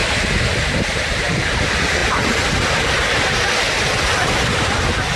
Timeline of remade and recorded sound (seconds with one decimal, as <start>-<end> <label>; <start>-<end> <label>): 0.0-5.2 recorded

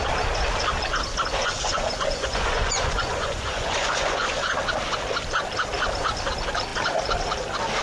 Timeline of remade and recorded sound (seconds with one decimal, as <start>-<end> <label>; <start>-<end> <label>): 0.0-1.4 recorded; 1.4-4.5 remade; 4.5-7.8 recorded

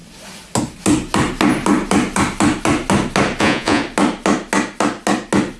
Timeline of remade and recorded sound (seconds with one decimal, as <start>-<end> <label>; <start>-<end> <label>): 0.0-3.4 recorded; 3.4-3.8 remade; 3.8-5.6 recorded

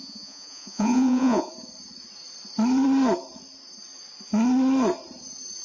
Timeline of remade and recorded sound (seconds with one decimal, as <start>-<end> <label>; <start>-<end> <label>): 0.0-1.5 remade; 1.5-5.6 recorded

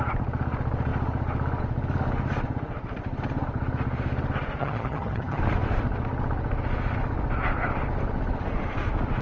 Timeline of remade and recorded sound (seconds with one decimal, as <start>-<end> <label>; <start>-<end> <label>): 0.0-4.6 recorded; 4.6-5.4 remade; 5.4-9.2 recorded

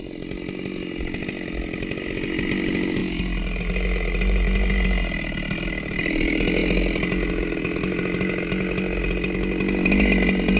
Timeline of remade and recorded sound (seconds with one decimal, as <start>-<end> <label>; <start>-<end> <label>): 0.0-10.6 recorded